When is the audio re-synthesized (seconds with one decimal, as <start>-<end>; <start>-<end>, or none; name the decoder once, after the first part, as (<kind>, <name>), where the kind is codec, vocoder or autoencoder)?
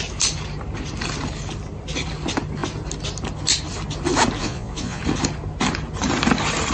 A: 4.4-5.0 (vocoder, Vocos)